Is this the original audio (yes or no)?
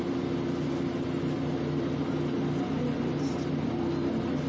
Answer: yes